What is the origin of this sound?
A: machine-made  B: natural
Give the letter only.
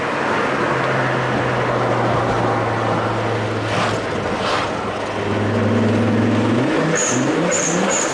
B